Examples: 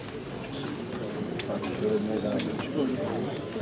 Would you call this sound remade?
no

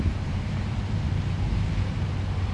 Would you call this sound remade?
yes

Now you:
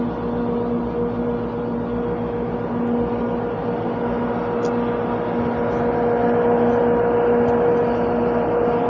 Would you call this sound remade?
no